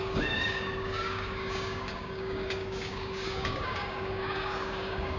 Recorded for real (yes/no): no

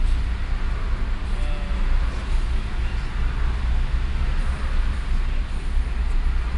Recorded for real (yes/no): yes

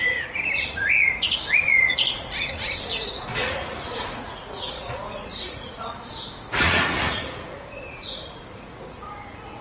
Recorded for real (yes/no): no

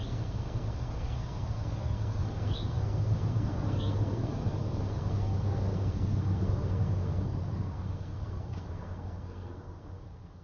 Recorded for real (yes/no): no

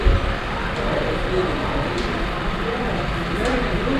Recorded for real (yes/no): yes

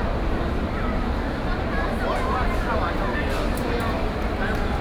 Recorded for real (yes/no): yes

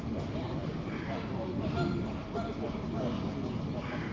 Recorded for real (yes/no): yes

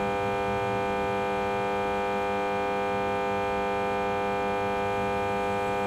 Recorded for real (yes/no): yes